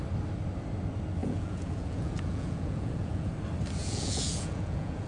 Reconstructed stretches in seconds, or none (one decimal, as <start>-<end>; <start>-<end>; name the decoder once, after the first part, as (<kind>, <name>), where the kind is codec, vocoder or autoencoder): 1.2-3.3 (vocoder, Vocos); 3.8-5.1